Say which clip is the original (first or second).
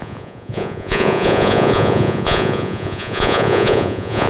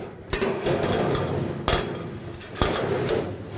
second